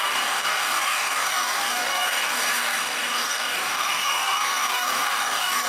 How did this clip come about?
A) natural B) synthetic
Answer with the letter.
B